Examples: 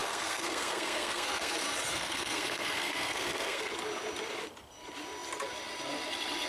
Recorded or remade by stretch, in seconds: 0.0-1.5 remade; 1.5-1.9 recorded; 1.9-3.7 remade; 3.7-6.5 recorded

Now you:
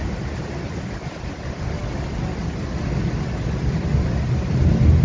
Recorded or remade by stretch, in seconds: 0.0-5.0 recorded

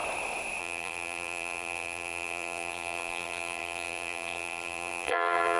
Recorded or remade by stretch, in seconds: 0.0-0.6 recorded; 0.6-5.6 remade

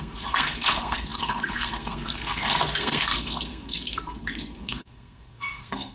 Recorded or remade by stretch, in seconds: 0.0-5.9 remade

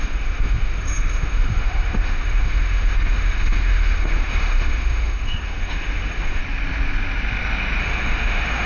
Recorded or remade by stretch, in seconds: 0.0-6.4 remade; 6.4-7.8 recorded; 7.8-8.7 remade

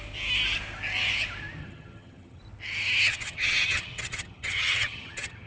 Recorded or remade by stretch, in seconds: 0.0-1.6 recorded; 1.6-2.4 remade; 2.4-3.1 recorded; 3.1-5.5 remade

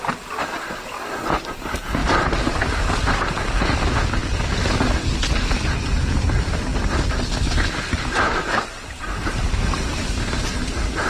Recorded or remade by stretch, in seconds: 0.0-2.0 recorded; 2.0-3.6 remade; 3.6-8.4 recorded; 8.4-10.0 remade; 10.0-11.1 recorded